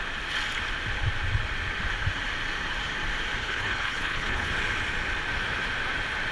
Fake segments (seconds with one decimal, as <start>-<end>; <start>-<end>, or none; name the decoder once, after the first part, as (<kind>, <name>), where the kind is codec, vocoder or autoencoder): 3.4-4.5 (codec, HILCodec)